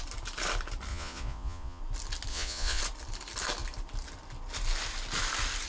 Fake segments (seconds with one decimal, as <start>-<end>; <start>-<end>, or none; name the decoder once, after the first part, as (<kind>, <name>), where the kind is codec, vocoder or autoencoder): 0.9-1.8 (vocoder, Vocos); 2.3-2.8